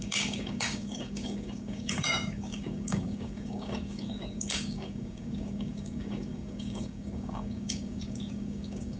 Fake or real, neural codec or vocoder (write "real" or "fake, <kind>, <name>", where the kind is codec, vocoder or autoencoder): fake, codec, DAC